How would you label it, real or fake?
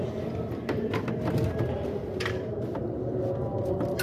real